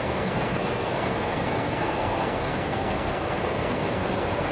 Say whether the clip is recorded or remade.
remade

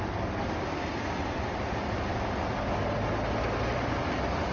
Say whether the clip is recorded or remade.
recorded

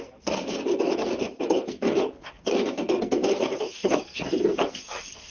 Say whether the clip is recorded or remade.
remade